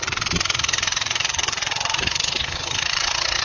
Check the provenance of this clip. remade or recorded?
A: remade